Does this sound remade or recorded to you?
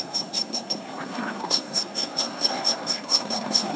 remade